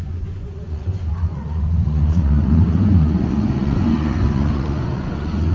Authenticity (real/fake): fake